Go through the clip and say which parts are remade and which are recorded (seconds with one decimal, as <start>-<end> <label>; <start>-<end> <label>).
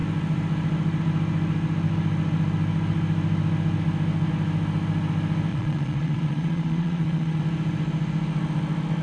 0.0-5.5 recorded; 5.5-7.4 remade; 7.4-9.0 recorded